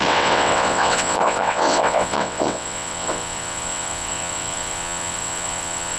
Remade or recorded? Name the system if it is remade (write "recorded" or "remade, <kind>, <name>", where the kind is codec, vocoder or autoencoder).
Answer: remade, vocoder, WaveNeXt